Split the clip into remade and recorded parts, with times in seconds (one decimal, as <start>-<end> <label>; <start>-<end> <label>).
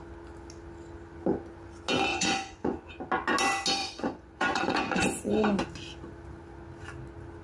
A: 0.0-2.1 recorded; 2.1-2.9 remade; 2.9-3.8 recorded; 3.8-5.3 remade; 5.3-7.4 recorded